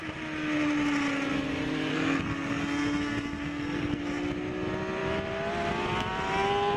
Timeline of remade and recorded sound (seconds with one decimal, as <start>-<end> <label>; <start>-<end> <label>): 0.0-1.9 recorded; 1.9-4.0 remade; 4.0-6.8 recorded